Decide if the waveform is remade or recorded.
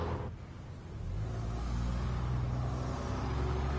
recorded